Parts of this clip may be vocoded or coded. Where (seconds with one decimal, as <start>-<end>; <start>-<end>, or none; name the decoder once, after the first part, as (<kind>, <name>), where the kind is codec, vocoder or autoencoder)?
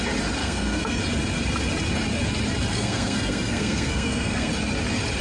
0.4-1.0 (codec, SNAC); 2.7-4.5